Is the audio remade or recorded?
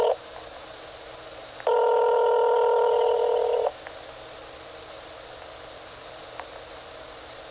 recorded